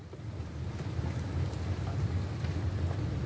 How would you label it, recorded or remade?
recorded